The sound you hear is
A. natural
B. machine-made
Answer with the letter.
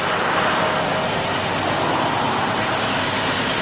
A